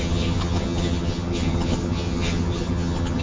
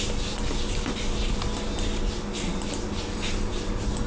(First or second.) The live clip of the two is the second